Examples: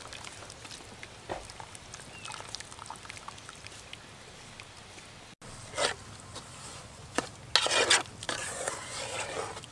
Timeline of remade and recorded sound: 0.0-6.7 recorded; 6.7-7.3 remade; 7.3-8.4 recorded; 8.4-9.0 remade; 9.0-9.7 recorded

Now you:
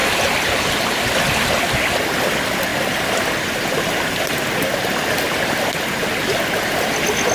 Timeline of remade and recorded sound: 0.0-7.3 recorded